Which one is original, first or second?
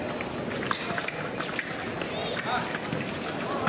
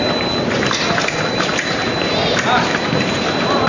first